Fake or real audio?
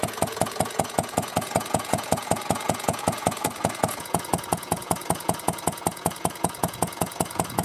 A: fake